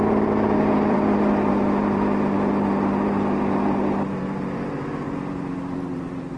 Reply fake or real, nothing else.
fake